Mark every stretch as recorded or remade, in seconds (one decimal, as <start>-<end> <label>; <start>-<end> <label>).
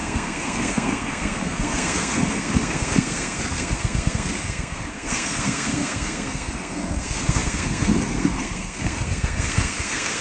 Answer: 0.0-10.2 remade